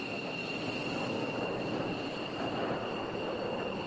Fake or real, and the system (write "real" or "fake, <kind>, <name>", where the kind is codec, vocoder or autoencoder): real